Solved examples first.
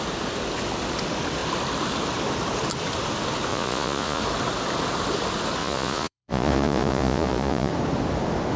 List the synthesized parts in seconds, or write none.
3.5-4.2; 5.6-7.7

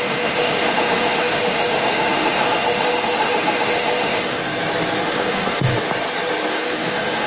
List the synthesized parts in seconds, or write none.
0.0-4.4; 5.0-5.7; 6.5-7.3